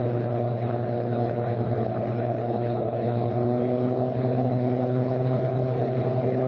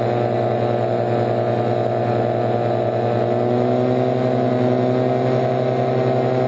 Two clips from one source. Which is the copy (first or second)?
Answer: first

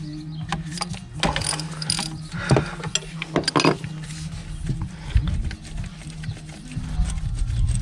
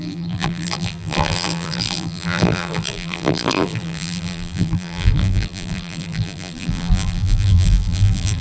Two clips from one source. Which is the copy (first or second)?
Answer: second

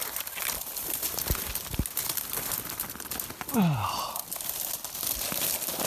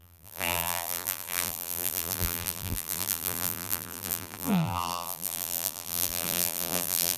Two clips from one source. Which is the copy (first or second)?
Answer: second